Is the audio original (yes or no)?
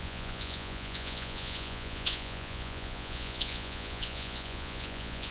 no